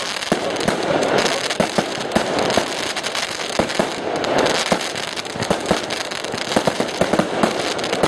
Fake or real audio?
fake